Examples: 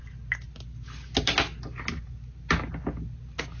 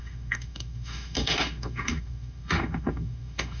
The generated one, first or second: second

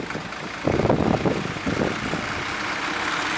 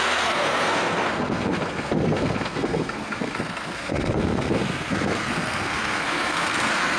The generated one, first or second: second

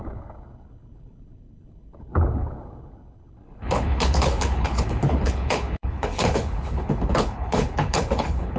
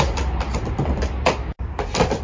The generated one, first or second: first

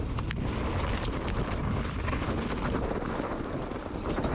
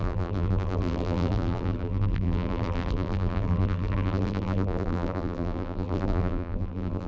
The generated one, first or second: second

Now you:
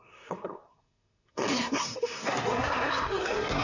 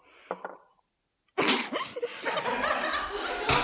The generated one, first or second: first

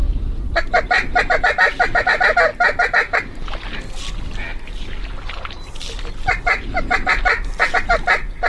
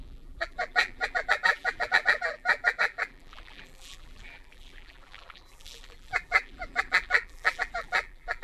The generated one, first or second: second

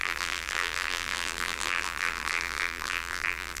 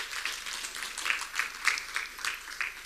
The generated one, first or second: first